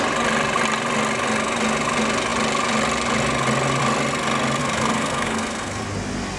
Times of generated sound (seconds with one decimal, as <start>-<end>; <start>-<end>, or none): 4.6-5.8